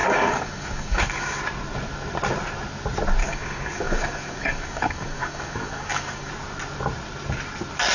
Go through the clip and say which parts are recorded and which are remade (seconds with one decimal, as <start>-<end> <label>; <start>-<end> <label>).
0.0-1.4 remade; 1.4-3.2 recorded; 3.2-6.3 remade; 6.3-7.9 recorded

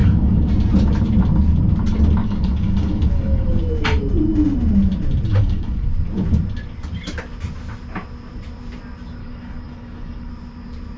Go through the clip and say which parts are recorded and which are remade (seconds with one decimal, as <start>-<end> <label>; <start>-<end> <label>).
0.0-0.5 remade; 0.5-2.2 recorded; 2.2-3.6 remade; 3.6-5.3 recorded; 5.3-5.9 remade; 5.9-9.2 recorded; 9.2-10.3 remade; 10.3-11.0 recorded

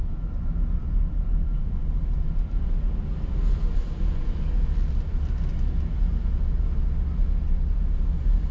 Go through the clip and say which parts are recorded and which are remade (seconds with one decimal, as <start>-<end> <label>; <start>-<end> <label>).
0.0-8.5 recorded